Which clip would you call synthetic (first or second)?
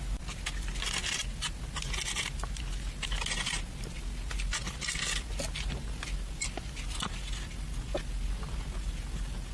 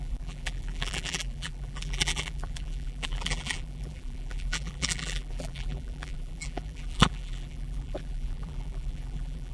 second